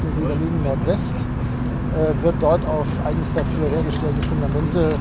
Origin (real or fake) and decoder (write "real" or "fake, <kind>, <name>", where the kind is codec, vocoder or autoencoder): real